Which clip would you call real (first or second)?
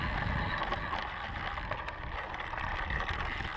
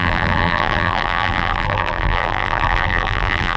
first